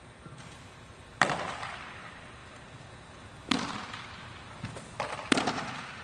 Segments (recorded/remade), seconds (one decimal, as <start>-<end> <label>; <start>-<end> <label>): 0.0-2.4 remade; 2.4-5.0 recorded; 5.0-6.0 remade

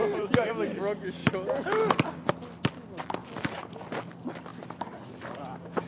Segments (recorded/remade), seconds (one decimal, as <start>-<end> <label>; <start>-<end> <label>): 0.0-0.5 remade; 0.5-5.9 recorded

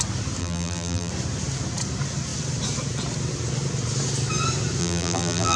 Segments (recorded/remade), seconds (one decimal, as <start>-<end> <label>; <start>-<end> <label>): 0.0-0.4 recorded; 0.4-1.1 remade; 1.1-4.8 recorded; 4.8-5.6 remade

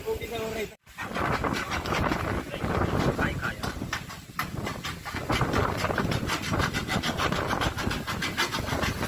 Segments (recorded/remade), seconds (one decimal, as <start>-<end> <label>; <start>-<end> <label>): 0.0-1.4 recorded; 1.4-3.2 remade; 3.2-5.6 recorded; 5.6-7.8 remade; 7.8-9.1 recorded